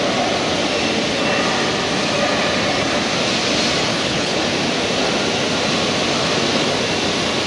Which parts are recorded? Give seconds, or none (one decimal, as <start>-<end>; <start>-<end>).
0.0-3.9; 4.4-7.5